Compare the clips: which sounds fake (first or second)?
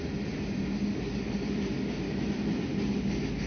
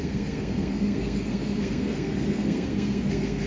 second